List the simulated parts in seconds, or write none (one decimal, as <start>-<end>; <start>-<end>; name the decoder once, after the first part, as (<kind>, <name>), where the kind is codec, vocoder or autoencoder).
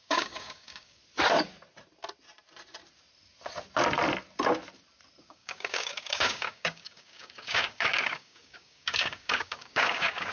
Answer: 0.0-1.0 (codec, DAC); 5.2-10.3